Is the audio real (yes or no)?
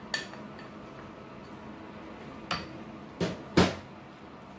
yes